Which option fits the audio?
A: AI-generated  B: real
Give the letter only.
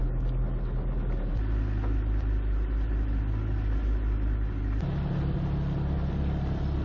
B